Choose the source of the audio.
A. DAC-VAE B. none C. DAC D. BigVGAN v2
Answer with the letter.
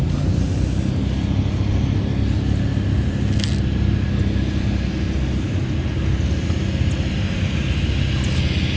B